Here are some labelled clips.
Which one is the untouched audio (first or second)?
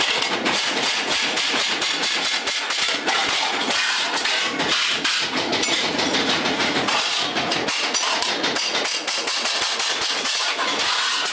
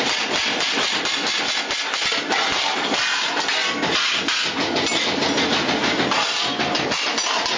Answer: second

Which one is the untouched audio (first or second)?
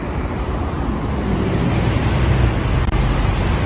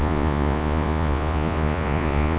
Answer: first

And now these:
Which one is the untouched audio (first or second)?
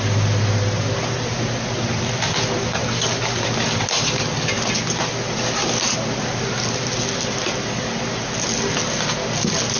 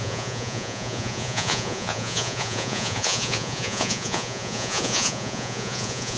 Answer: first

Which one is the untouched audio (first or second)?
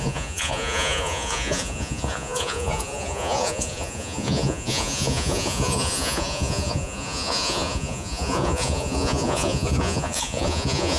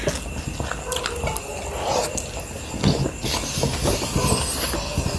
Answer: second